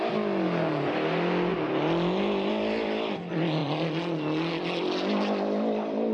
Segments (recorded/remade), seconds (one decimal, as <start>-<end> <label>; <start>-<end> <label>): 0.0-6.1 recorded